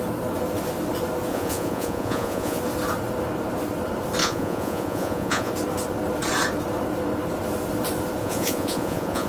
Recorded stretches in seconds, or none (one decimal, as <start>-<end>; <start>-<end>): 0.0-1.3; 2.6-4.2; 5.5-8.2